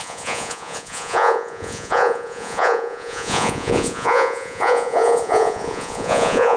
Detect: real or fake fake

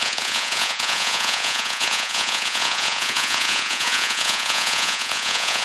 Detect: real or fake fake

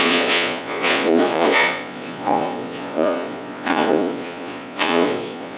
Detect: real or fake fake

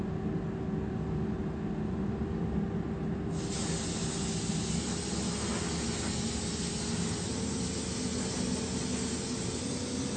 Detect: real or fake real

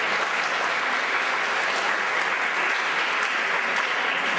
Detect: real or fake real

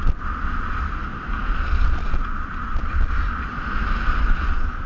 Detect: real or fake real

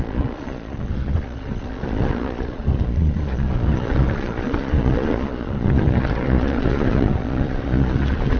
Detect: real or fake fake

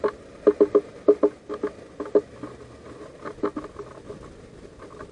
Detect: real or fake real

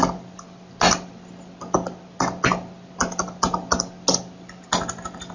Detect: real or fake real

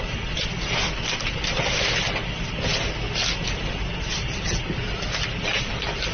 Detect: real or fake real